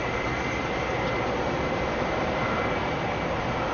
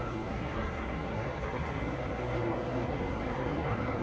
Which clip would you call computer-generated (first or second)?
second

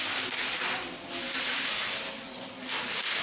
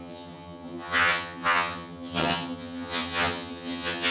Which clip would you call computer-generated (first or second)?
second